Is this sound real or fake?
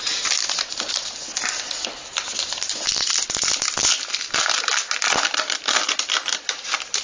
real